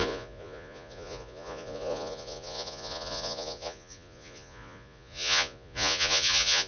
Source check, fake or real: fake